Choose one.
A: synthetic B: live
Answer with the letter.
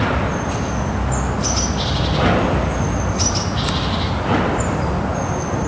B